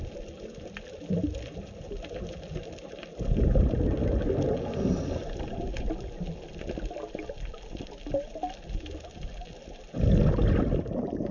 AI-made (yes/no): no